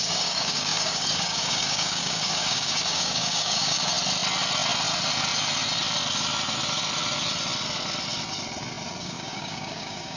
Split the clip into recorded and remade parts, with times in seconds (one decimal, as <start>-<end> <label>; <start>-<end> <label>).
0.0-3.8 remade; 3.8-9.0 recorded; 9.0-10.2 remade